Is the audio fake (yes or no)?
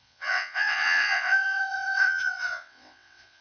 yes